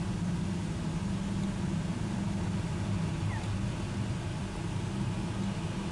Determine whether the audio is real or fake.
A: real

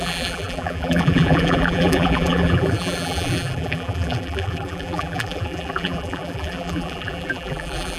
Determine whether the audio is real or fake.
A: fake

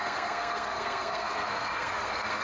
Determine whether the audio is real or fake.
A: fake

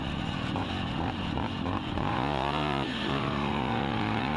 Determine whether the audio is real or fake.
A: fake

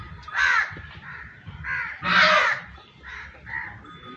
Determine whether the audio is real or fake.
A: real